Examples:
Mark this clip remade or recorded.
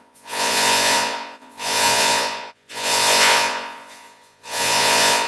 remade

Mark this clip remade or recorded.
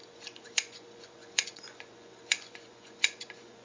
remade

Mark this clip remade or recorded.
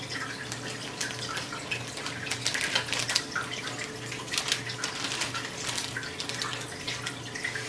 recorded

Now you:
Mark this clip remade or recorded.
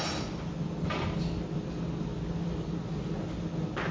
recorded